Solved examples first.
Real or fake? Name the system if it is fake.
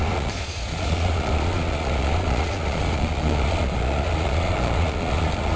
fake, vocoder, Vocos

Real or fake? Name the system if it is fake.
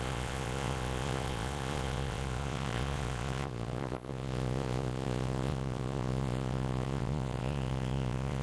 fake, vocoder, Vocos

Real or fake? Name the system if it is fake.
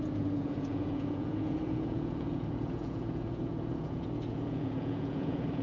fake, vocoder, Vocos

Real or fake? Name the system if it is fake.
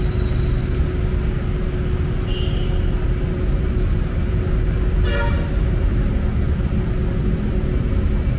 real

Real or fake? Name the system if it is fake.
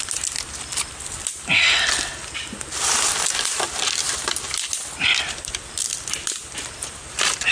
real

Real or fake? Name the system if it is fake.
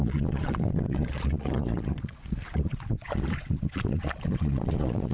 fake, vocoder, Vocos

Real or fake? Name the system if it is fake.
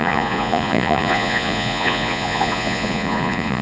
fake, vocoder, Vocos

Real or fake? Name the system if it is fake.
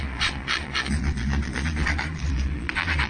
fake, vocoder, Vocos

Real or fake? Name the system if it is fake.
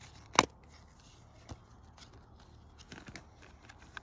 real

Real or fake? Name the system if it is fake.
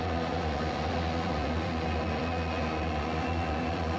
fake, vocoder, Vocos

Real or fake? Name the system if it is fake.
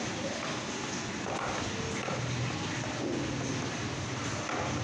real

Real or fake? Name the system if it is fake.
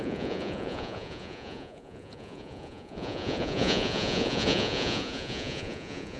fake, vocoder, Vocos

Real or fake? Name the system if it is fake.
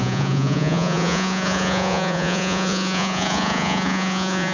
fake, vocoder, Vocos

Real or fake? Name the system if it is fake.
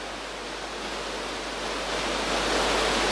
real